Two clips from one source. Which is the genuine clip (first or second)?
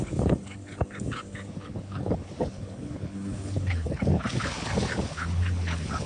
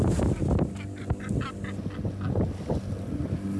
second